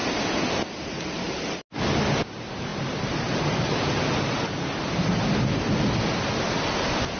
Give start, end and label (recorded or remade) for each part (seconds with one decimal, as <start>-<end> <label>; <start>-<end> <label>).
0.0-7.2 recorded